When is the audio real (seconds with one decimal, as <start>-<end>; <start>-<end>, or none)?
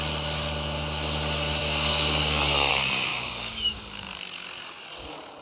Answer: 0.0-1.6; 2.7-3.1; 4.1-5.4